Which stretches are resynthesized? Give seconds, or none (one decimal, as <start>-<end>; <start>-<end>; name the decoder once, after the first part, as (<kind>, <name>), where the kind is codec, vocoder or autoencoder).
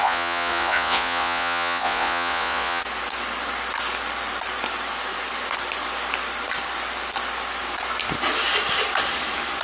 0.0-2.8 (vocoder, Vocos)